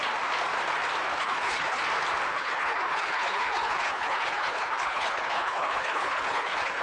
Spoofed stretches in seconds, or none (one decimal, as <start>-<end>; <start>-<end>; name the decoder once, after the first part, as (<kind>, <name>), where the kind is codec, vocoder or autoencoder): 1.1-1.8 (codec, HILCodec); 2.3-6.8

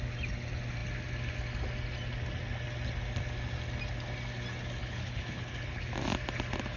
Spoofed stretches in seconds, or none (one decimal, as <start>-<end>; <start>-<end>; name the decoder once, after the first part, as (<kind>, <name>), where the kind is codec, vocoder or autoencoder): 4.8-5.8 (codec, HILCodec)

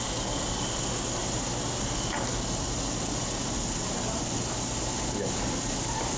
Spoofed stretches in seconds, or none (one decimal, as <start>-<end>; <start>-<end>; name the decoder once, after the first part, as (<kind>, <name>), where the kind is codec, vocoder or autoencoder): none

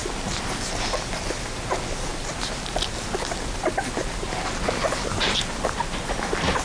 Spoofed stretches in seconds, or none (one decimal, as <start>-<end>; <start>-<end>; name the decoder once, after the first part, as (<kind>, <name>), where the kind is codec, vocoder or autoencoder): none